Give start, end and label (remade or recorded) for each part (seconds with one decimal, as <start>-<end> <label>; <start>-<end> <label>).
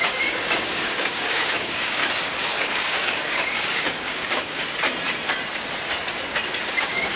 0.0-2.0 remade; 2.0-2.6 recorded; 2.6-4.6 remade; 4.6-6.7 recorded; 6.7-7.2 remade